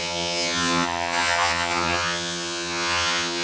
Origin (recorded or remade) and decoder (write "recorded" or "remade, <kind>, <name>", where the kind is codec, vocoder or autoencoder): remade, vocoder, HiFi-GAN